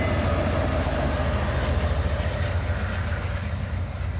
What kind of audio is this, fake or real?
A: real